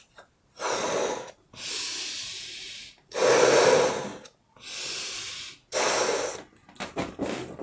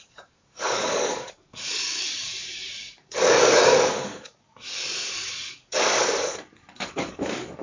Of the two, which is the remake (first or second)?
second